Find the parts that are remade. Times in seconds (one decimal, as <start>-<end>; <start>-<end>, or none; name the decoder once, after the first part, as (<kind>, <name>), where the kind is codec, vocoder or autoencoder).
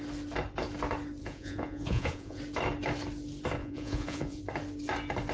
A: 1.2-2.4 (vocoder, Vocos); 3.6-4.4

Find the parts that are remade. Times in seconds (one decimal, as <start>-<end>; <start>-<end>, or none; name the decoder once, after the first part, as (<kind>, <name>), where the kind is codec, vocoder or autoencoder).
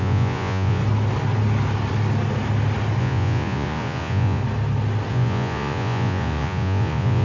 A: 0.0-0.8 (vocoder, Vocos); 3.0-4.4; 5.1-7.2